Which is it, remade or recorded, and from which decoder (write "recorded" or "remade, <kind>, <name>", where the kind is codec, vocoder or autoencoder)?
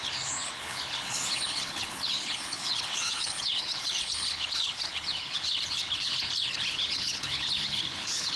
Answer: remade, codec, HILCodec